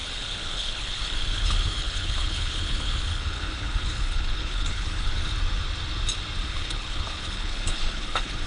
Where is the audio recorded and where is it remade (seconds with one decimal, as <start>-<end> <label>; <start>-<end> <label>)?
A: 0.0-5.3 remade; 5.3-6.4 recorded; 6.4-8.5 remade